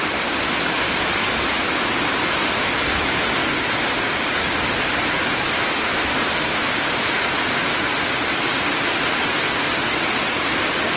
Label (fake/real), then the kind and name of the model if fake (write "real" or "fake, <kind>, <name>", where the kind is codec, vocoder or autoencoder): real